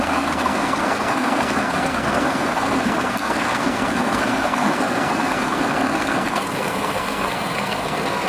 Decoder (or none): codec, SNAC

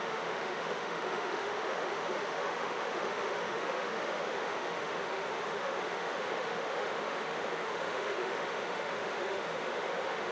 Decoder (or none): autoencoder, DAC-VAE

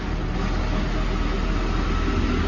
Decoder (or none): none